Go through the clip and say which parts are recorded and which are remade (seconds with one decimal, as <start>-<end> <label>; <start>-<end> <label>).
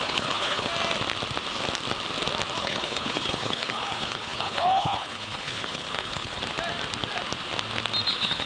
0.0-0.7 remade; 0.7-2.6 recorded; 2.6-6.4 remade; 6.4-8.1 recorded; 8.1-8.5 remade